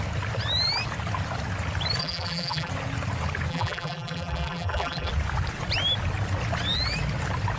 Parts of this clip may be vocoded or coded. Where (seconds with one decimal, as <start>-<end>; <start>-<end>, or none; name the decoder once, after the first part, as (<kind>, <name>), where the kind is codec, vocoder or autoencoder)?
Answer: 2.0-2.7 (vocoder, BigVGAN v2); 3.5-5.1